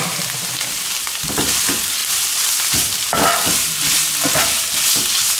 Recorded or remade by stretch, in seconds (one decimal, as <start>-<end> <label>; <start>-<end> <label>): 0.0-5.4 recorded

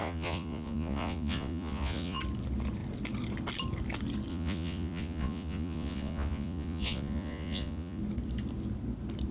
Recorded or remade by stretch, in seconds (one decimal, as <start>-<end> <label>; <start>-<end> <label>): 0.0-2.2 remade; 2.2-4.3 recorded; 4.3-8.0 remade; 8.0-9.3 recorded

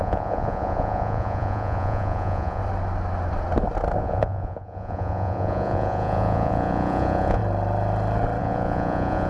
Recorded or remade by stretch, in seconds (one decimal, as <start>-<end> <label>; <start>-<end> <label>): 0.0-2.6 remade; 2.6-4.0 recorded; 4.0-7.4 remade; 7.4-8.4 recorded; 8.4-9.3 remade

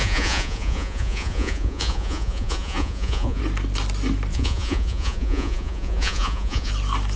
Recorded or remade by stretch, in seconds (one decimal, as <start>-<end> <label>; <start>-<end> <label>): 0.0-3.4 remade; 3.4-4.3 recorded; 4.3-6.7 remade; 6.7-7.2 recorded

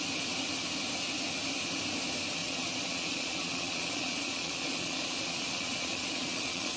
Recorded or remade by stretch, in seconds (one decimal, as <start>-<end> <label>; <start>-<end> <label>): 0.0-2.4 recorded; 2.4-6.8 remade